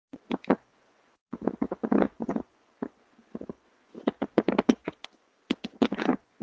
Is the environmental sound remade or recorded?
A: remade